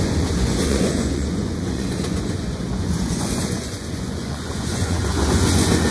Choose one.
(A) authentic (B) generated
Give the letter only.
B